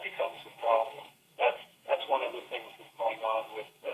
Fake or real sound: fake